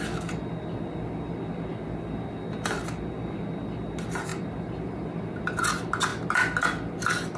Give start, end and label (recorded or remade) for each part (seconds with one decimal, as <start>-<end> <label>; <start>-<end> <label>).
0.0-4.3 recorded; 4.3-5.1 remade; 5.1-7.4 recorded